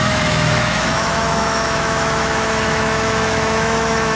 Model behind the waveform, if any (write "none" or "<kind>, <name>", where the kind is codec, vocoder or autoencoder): autoencoder, DAC-VAE